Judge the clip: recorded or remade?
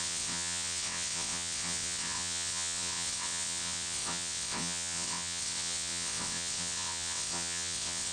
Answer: remade